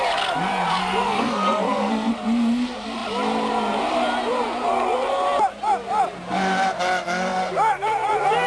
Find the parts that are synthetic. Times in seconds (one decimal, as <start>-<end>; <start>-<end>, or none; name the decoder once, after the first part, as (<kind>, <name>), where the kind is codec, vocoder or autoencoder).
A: 0.8-2.1 (codec, SNAC)